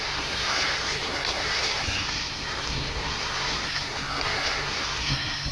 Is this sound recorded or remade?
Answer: remade